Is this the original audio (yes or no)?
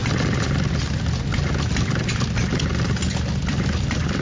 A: yes